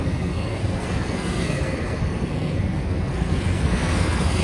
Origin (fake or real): fake